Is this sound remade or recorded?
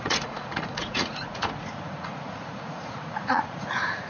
remade